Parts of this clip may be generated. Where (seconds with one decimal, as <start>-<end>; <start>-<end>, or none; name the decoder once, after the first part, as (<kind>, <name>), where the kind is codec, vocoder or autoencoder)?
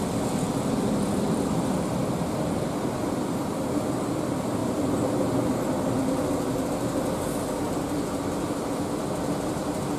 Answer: none